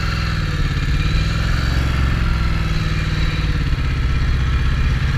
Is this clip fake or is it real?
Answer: real